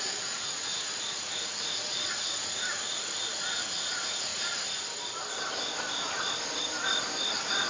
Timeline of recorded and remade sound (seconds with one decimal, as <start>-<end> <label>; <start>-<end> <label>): 0.0-4.3 remade; 4.3-7.7 recorded